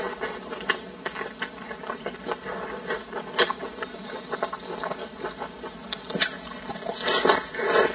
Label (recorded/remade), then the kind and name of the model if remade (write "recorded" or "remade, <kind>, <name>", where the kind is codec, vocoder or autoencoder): recorded